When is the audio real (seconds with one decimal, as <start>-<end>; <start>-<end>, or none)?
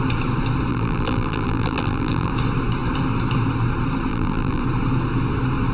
0.0-0.7; 2.3-4.1; 4.6-5.7